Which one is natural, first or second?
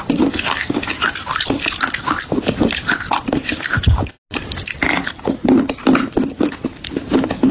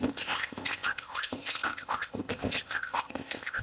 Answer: first